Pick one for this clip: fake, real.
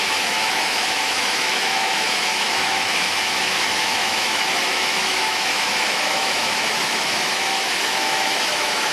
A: fake